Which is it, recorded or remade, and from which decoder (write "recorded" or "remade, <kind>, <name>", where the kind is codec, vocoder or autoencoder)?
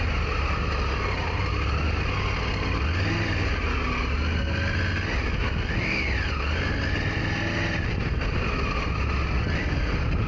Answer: recorded